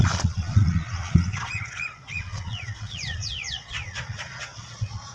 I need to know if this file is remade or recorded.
remade